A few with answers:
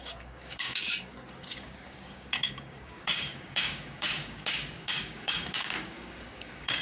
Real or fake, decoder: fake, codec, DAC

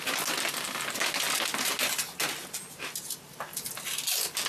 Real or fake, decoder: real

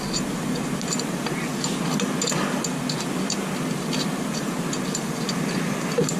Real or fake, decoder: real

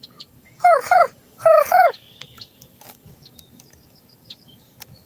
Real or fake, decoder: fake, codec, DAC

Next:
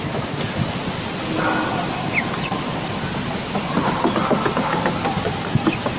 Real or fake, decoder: real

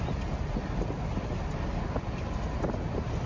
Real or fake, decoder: real